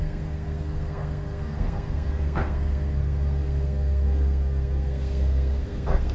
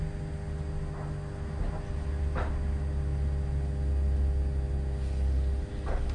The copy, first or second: first